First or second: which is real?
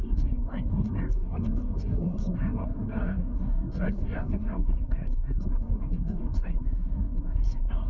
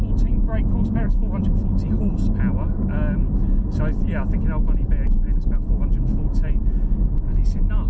second